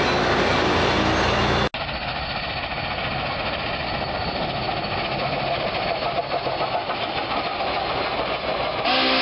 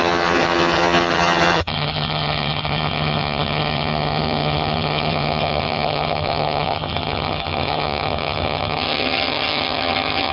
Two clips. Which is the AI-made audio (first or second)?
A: second